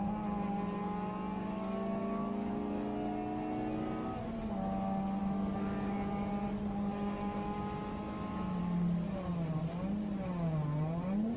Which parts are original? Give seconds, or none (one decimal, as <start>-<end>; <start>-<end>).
0.0-2.0; 2.5-5.2; 6.3-6.9; 8.6-11.4